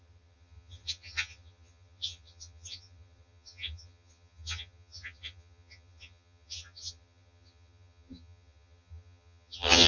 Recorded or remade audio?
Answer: remade